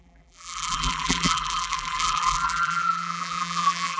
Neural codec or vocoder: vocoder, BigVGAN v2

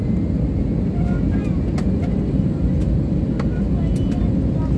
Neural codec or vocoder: none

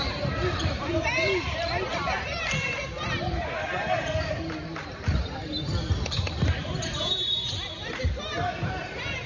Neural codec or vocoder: vocoder, BigVGAN v2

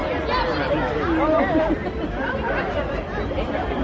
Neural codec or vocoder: none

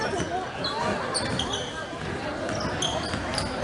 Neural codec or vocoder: none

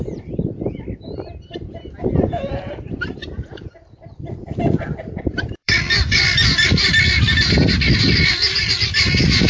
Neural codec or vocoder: vocoder, BigVGAN v2